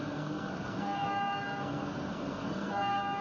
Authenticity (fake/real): fake